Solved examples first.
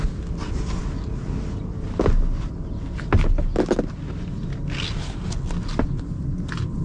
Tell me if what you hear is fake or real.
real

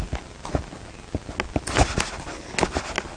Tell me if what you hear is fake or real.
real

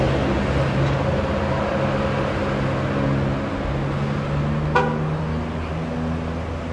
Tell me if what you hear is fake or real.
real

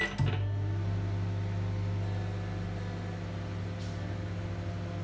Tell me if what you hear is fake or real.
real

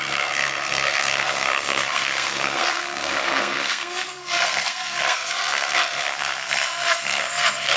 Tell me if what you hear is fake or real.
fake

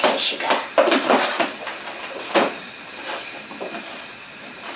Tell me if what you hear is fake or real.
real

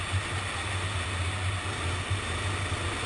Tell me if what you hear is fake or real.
real